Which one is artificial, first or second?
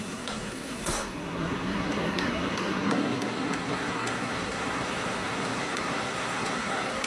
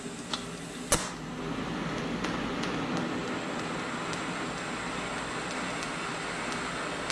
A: first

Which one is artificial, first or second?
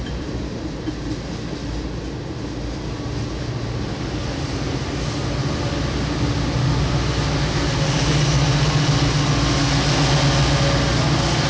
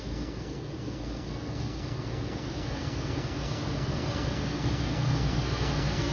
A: second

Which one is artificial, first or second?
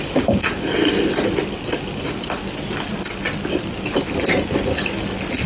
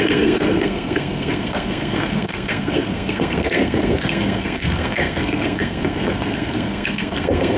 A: second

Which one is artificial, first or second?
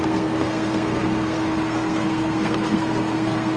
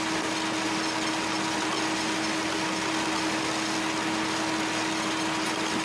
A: first